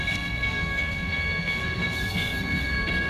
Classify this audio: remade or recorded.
remade